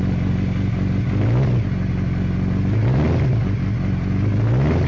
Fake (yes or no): no